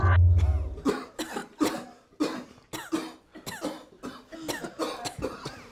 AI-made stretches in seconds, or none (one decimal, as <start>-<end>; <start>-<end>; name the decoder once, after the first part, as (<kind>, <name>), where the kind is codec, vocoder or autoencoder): none